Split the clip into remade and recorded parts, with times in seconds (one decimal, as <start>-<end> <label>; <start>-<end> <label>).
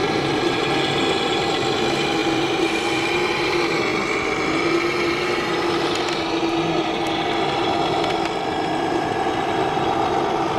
0.0-0.9 remade; 0.9-2.2 recorded; 2.2-3.5 remade; 3.5-10.6 recorded